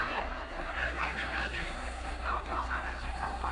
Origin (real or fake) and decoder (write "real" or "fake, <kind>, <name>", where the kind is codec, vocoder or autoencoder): fake, codec, SNAC